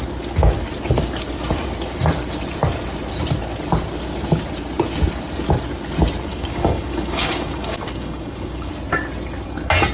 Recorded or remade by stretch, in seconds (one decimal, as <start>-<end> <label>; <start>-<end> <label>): 0.0-6.3 recorded; 6.3-8.7 remade; 8.7-9.9 recorded